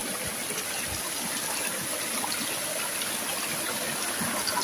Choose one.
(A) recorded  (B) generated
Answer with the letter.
A